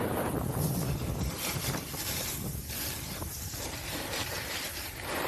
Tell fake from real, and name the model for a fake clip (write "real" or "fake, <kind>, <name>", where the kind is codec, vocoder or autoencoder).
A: fake, vocoder, BigVGAN v2